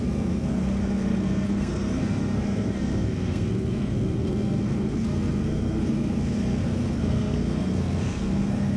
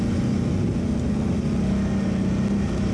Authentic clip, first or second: second